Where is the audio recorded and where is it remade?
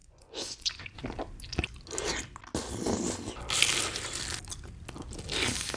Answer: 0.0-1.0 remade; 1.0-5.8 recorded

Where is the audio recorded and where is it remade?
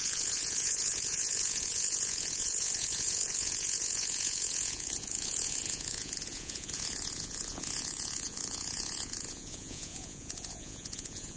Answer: 0.0-11.4 remade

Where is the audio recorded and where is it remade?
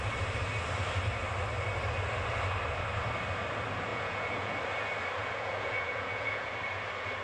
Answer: 0.0-3.9 recorded; 3.9-4.5 remade; 4.5-5.2 recorded; 5.2-6.5 remade; 6.5-7.2 recorded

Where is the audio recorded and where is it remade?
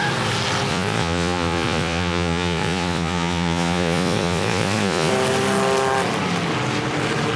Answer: 0.0-0.7 recorded; 0.7-5.1 remade; 5.1-7.4 recorded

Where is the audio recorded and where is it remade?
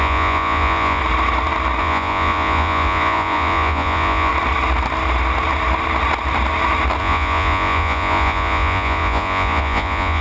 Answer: 0.0-1.0 remade; 1.0-1.8 recorded; 1.8-4.3 remade; 4.3-7.0 recorded; 7.0-10.2 remade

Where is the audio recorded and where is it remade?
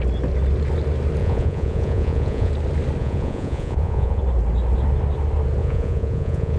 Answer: 0.0-1.2 recorded; 1.2-2.5 remade; 2.5-3.0 recorded; 3.0-4.2 remade; 4.2-5.6 recorded; 5.6-6.6 remade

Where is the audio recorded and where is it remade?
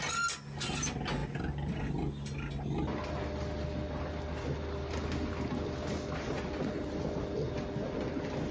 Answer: 0.0-8.5 recorded